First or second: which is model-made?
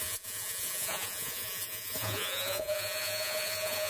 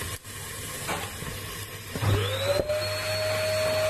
first